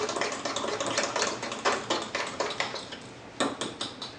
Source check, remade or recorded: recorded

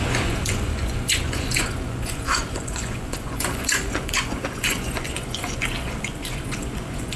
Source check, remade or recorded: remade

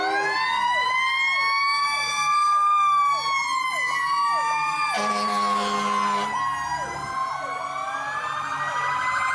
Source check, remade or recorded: recorded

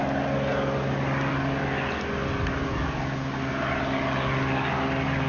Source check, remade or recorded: recorded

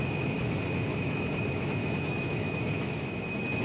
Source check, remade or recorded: remade